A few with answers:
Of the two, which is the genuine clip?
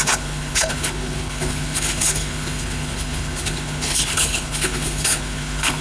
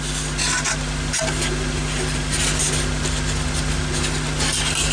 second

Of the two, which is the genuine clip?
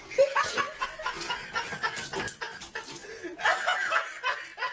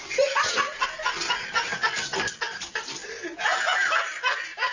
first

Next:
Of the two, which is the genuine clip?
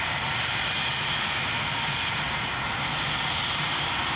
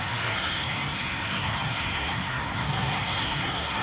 first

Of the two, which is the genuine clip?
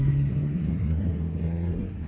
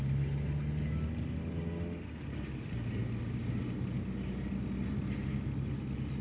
second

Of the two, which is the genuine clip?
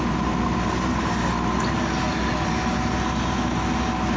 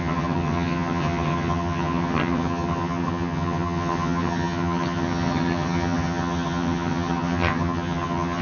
first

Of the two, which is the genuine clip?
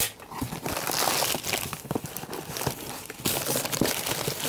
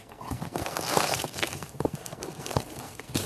first